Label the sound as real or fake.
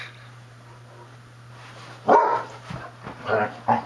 real